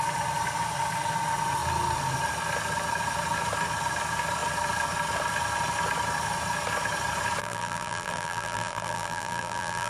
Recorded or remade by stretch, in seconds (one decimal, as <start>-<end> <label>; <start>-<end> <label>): 0.0-7.4 recorded; 7.4-9.9 remade